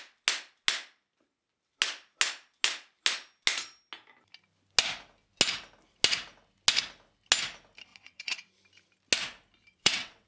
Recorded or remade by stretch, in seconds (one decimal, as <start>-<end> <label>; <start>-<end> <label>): 0.0-7.9 recorded; 7.9-8.5 remade; 8.5-9.7 recorded; 9.7-10.3 remade